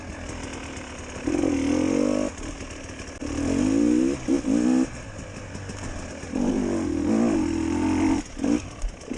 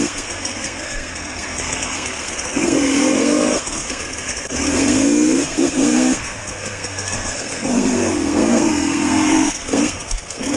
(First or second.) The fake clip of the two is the second